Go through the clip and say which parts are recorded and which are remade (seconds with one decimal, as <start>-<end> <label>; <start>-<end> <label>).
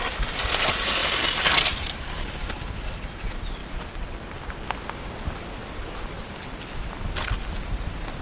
0.0-3.6 recorded; 3.6-4.2 remade; 4.2-6.2 recorded; 6.2-8.2 remade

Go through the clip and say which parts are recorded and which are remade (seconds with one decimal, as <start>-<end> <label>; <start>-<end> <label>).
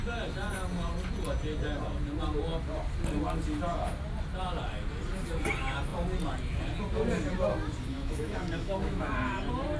0.0-7.9 recorded; 7.9-9.1 remade; 9.1-9.8 recorded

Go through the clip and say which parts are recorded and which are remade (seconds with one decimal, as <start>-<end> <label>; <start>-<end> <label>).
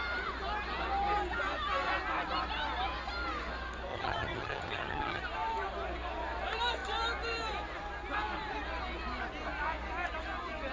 0.0-3.9 recorded; 3.9-5.2 remade; 5.2-10.7 recorded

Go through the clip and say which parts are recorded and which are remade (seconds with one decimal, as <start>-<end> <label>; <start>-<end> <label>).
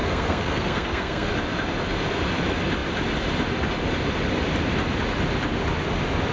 0.0-1.3 remade; 1.3-6.3 recorded